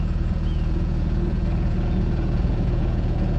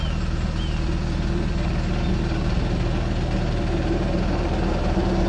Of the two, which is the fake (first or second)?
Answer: first